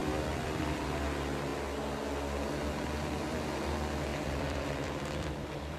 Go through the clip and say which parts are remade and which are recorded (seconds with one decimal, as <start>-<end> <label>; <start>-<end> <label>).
0.0-0.6 remade; 0.6-4.1 recorded; 4.1-5.8 remade